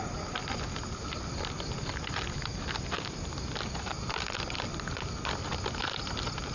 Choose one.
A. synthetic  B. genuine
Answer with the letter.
B